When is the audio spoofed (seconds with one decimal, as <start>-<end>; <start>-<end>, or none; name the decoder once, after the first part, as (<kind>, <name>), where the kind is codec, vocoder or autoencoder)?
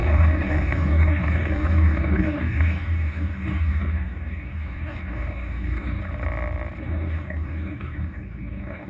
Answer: 0.0-6.0 (codec, DAC); 6.8-8.9